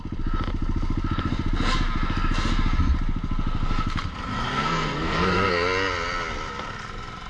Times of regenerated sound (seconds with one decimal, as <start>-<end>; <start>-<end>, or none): 4.5-5.5